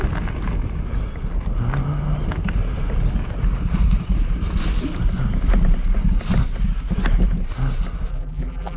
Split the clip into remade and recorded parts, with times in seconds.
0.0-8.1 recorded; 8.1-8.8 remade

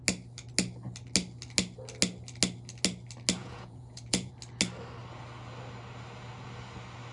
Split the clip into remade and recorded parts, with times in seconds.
0.0-3.4 recorded; 3.4-4.3 remade; 4.3-7.1 recorded

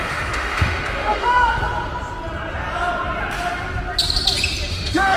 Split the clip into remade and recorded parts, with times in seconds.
0.0-1.6 remade; 1.6-4.7 recorded; 4.7-5.2 remade

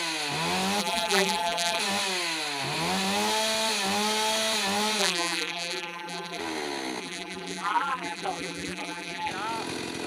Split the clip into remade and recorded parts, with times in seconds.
0.0-0.8 recorded; 0.8-1.8 remade; 1.8-5.0 recorded; 5.0-6.4 remade; 6.4-7.0 recorded; 7.0-9.3 remade; 9.3-10.1 recorded